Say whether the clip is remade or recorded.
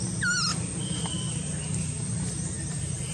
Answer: recorded